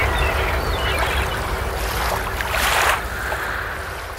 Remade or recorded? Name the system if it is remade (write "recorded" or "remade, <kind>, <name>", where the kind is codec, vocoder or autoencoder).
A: recorded